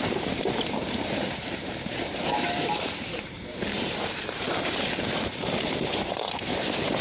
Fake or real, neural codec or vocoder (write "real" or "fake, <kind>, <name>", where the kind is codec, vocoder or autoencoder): fake, vocoder, BigVGAN v2